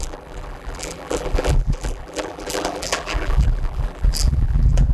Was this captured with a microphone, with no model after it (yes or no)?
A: no